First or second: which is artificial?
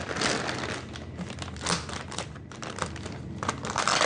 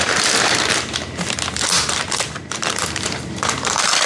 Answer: second